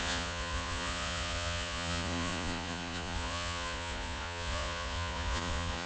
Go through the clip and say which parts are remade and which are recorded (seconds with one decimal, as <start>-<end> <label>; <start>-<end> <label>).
0.0-5.9 remade